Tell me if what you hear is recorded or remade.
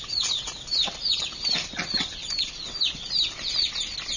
recorded